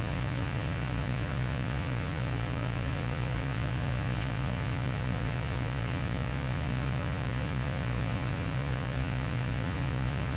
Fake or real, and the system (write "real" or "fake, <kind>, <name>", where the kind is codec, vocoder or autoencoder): fake, vocoder, Vocos